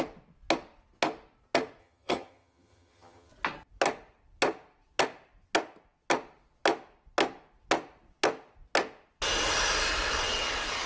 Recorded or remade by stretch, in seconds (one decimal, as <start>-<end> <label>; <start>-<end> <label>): 0.0-1.8 recorded; 1.8-3.3 remade; 3.3-10.9 recorded